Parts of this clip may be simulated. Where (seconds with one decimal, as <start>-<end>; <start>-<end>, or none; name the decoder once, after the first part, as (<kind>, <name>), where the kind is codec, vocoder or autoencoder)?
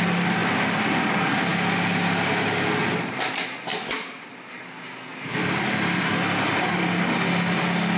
0.4-1.0 (vocoder, BigVGAN v2); 5.1-6.9